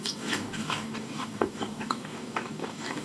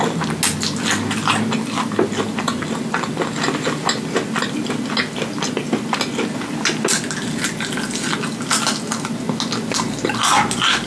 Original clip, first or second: second